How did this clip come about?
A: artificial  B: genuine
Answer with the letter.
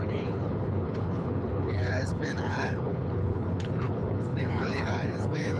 A